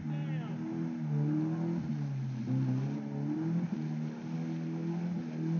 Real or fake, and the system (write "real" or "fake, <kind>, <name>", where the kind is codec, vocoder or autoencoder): real